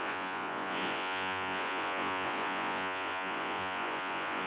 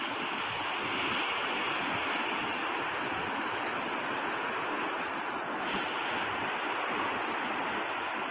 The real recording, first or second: second